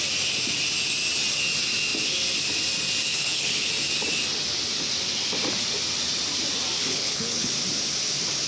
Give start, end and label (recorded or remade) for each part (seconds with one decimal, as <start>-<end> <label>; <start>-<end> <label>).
0.0-3.1 recorded; 3.1-3.7 remade; 3.7-6.8 recorded; 6.8-7.5 remade; 7.5-8.5 recorded